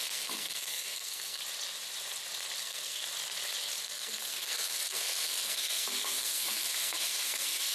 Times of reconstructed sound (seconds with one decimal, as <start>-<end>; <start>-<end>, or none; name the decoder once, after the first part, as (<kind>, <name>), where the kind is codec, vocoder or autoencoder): 0.0-1.4 (codec, SNAC); 2.6-3.0; 3.8-7.7